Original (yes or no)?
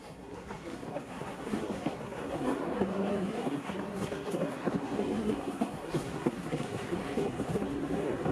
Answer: no